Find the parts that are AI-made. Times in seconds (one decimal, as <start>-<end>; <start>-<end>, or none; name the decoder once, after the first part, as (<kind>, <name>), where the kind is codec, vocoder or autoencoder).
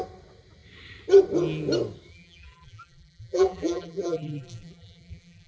2.1-5.5 (vocoder, BigVGAN v2)